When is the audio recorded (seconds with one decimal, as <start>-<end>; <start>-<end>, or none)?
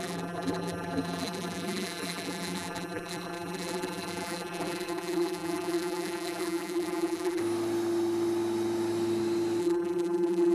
7.4-9.6